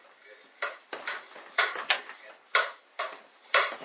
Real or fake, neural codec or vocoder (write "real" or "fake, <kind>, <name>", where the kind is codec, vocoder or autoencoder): real